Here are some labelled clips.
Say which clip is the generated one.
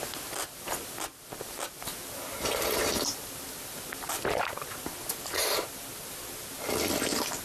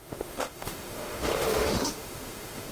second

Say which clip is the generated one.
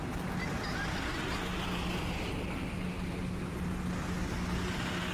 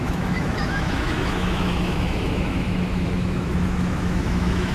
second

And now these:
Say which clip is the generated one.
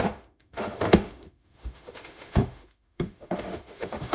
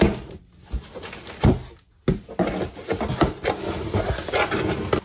first